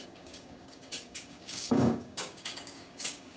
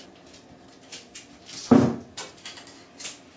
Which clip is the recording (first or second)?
second